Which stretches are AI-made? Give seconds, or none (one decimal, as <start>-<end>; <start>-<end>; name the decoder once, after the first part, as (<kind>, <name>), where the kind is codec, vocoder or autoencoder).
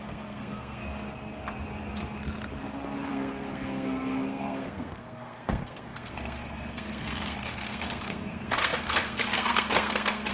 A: 0.0-0.8 (codec, SNAC); 3.1-10.3